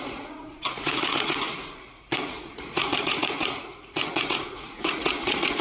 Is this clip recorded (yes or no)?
no